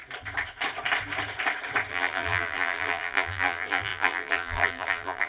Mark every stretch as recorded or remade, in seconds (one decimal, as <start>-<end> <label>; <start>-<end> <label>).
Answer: 0.0-1.9 recorded; 1.9-5.3 remade